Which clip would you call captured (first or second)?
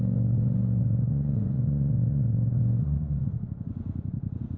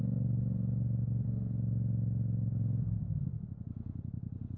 second